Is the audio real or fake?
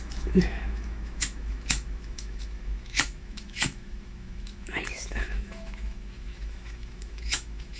fake